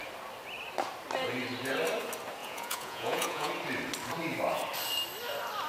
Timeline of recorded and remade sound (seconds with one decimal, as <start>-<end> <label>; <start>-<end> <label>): 0.0-2.4 recorded; 2.4-3.5 remade; 3.5-5.7 recorded